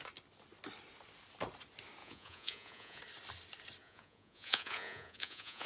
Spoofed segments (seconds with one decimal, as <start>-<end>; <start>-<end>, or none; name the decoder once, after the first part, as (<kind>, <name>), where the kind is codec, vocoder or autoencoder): 2.0-3.0 (vocoder, Vocos); 3.8-5.7